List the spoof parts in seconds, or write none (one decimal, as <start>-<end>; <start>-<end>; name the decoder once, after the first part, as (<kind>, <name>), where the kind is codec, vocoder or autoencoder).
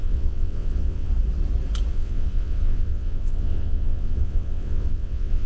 0.0-1.1 (vocoder, WaveNeXt); 1.9-5.5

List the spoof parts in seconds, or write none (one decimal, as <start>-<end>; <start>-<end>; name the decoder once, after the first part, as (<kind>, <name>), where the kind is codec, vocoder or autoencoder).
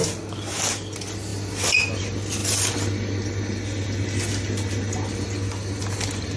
none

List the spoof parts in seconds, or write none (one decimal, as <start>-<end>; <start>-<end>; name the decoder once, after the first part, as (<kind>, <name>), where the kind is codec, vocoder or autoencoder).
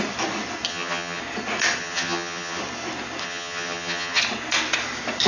0.7-1.2 (vocoder, HiFi-GAN); 1.8-2.6; 3.2-4.2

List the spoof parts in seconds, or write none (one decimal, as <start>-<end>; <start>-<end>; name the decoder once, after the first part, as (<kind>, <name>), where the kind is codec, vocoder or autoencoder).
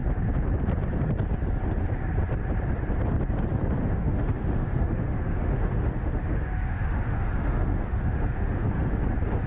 3.8-9.0 (autoencoder, DAC-VAE)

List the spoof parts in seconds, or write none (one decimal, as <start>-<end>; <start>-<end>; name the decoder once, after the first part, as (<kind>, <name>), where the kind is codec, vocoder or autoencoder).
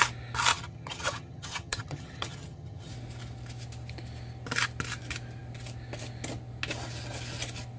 0.5-2.9 (vocoder, HiFi-GAN)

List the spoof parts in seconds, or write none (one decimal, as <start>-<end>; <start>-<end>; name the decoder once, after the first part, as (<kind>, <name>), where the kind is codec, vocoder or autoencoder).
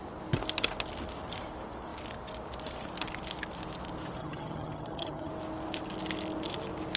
4.2-5.3 (vocoder, HiFi-GAN)